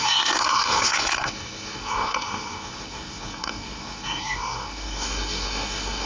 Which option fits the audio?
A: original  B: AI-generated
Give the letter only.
B